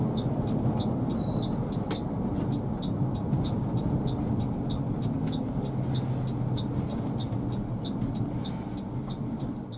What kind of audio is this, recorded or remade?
recorded